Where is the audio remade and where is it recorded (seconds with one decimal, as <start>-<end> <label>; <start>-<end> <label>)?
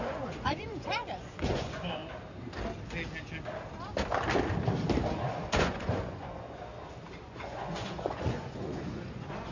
0.0-2.0 remade; 2.0-5.2 recorded; 5.2-6.7 remade; 6.7-7.2 recorded; 7.2-9.5 remade